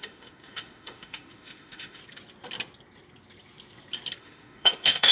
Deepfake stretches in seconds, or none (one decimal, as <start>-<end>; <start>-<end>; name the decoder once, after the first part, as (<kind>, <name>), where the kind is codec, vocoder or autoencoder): 0.0-2.0 (autoencoder, DAC-VAE); 4.2-5.1